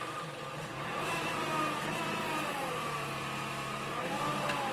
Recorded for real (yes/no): yes